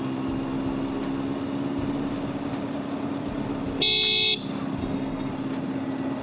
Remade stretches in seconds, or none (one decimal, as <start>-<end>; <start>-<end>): 4.8-5.3